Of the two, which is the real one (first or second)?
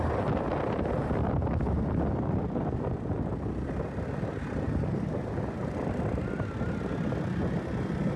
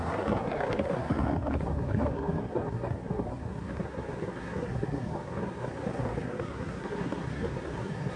first